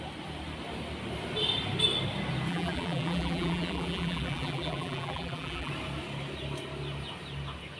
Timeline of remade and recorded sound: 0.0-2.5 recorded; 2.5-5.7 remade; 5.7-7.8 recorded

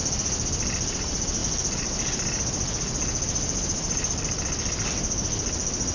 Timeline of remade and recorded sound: 0.0-5.9 recorded

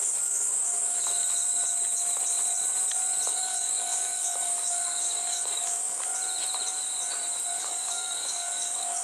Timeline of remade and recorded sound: 0.0-1.2 remade; 1.2-3.3 recorded; 3.3-6.1 remade; 6.1-7.6 recorded; 7.6-9.0 remade

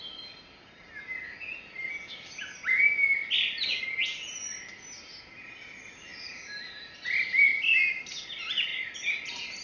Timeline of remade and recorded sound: 0.0-9.6 recorded

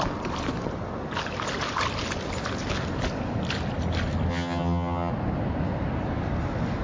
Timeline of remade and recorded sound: 0.0-4.3 recorded; 4.3-5.1 remade; 5.1-6.8 recorded